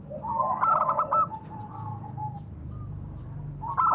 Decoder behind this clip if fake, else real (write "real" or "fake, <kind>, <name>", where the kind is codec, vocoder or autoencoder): real